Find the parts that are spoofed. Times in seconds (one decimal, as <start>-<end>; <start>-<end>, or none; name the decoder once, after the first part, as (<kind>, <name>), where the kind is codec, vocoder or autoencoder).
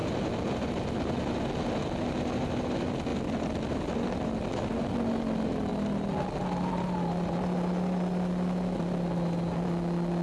none